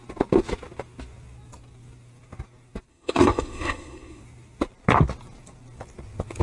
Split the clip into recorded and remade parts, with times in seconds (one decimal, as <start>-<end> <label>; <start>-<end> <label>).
0.0-2.9 recorded; 2.9-4.2 remade; 4.2-6.4 recorded